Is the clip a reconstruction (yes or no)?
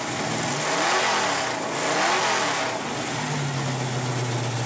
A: no